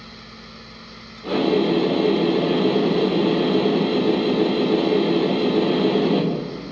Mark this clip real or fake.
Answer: real